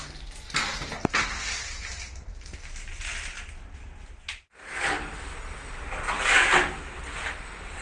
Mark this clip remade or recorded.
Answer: recorded